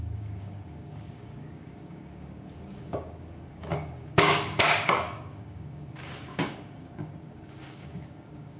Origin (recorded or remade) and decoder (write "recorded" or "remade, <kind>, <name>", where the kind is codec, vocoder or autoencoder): remade, codec, DAC